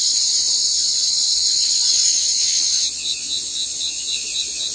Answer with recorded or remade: remade